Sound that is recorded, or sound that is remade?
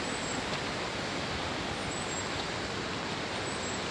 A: recorded